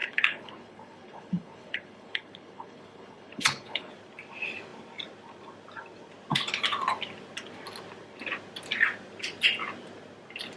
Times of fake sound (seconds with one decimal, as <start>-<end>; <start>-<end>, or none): 0.0-3.9